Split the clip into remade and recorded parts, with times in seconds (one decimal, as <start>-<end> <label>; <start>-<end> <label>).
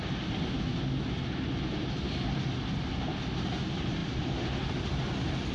0.0-5.5 recorded